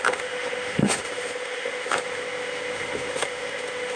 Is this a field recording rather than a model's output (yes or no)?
no